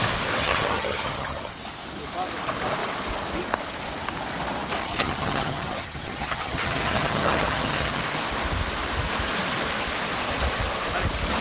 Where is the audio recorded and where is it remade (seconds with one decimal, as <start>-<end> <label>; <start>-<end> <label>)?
0.0-0.4 recorded; 0.4-1.5 remade; 1.5-4.8 recorded; 4.8-8.0 remade; 8.0-11.4 recorded